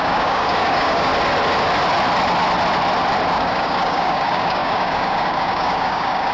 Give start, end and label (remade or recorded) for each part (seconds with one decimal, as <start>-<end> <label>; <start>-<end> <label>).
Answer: 0.0-1.1 remade; 1.1-3.3 recorded; 3.3-6.3 remade